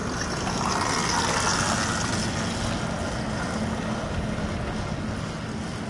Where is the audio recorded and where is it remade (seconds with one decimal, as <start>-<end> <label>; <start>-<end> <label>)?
0.0-0.7 remade; 0.7-5.9 recorded